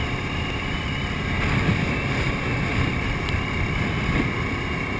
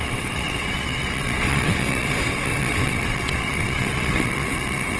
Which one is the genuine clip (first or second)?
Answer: first